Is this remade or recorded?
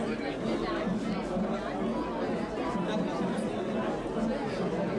recorded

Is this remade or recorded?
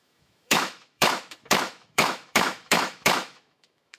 remade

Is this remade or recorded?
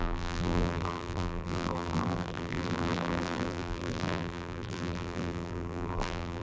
remade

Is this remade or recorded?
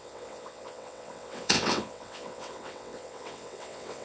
remade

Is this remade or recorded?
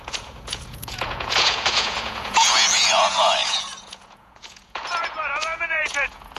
remade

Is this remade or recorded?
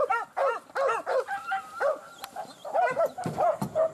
recorded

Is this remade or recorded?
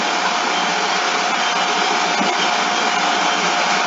recorded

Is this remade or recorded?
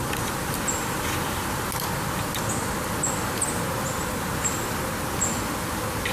recorded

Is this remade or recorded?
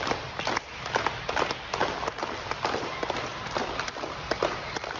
recorded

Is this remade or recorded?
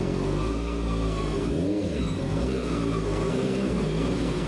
remade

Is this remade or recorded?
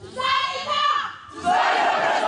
recorded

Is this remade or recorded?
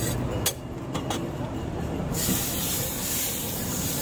remade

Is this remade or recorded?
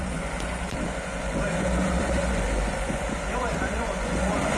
remade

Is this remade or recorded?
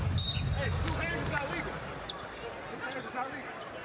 recorded